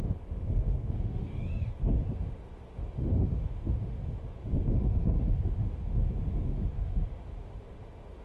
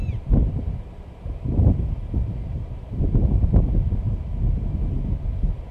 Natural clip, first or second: second